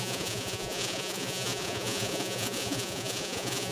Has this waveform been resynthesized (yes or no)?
yes